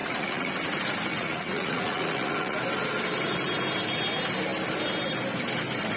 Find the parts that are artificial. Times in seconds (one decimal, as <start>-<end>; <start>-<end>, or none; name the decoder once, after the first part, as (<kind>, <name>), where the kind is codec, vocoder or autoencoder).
0.0-0.5 (vocoder, Vocos); 1.1-2.6